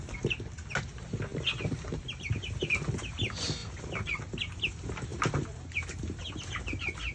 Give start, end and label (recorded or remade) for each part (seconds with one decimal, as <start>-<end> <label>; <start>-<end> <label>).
0.0-7.1 recorded